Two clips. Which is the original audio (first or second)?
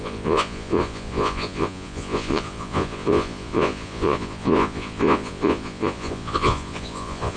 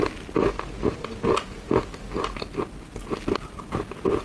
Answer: second